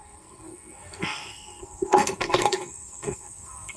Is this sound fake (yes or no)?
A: yes